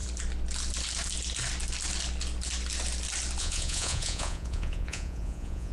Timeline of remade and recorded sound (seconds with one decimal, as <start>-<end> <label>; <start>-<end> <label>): 0.0-3.4 recorded; 3.4-5.7 remade